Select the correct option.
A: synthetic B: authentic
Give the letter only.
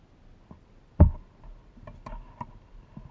B